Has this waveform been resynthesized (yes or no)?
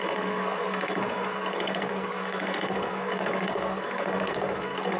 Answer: yes